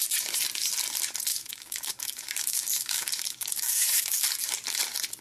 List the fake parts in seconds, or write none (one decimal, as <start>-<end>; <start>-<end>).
1.3-4.4